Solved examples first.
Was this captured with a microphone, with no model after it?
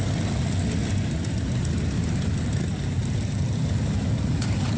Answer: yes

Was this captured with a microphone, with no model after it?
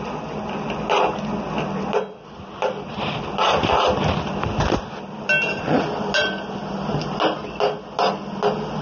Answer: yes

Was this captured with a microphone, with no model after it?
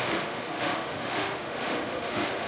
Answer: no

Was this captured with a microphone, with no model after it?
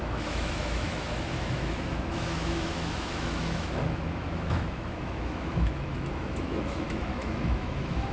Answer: no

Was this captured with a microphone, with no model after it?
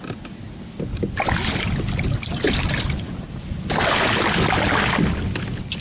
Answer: yes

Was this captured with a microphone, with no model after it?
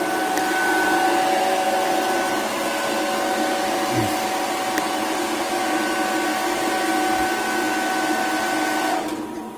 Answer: yes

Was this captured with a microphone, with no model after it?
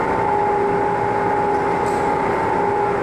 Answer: yes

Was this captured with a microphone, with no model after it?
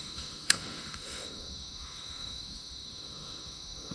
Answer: no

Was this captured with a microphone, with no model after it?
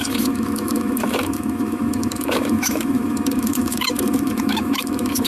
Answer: no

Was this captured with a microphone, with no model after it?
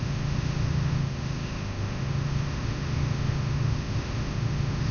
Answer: no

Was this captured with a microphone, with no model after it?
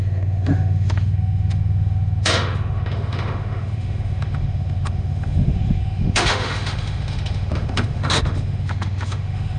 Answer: no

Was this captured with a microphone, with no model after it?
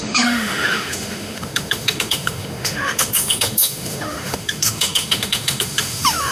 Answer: no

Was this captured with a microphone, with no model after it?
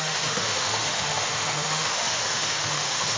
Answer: no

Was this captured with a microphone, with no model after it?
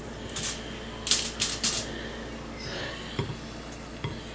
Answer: yes